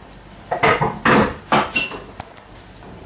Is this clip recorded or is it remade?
recorded